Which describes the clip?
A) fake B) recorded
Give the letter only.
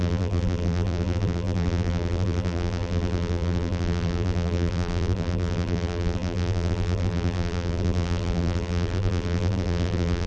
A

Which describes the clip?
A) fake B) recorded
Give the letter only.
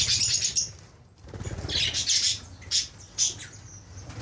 B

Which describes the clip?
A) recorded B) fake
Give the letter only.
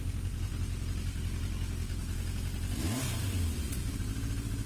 A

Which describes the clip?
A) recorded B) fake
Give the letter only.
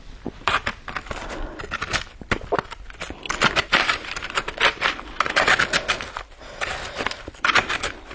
B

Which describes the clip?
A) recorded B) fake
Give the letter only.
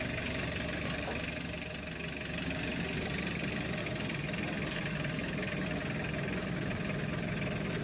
A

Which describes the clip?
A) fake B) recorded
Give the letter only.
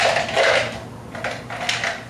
B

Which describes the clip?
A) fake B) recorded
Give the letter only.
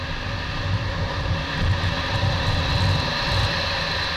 B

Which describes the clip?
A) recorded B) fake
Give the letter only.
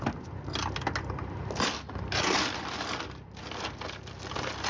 A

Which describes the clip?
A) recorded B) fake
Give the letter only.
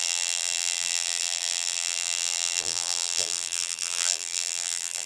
B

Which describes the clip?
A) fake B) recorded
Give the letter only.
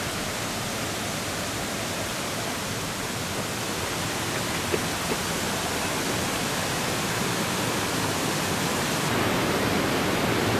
B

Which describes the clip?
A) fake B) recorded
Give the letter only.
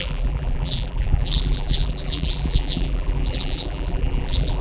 A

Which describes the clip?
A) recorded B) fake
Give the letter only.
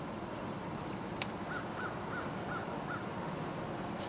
A